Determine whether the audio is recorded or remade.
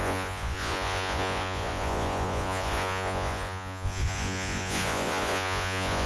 remade